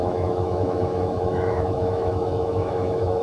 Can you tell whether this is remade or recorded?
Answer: remade